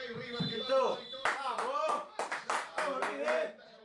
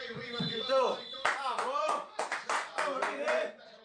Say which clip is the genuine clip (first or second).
first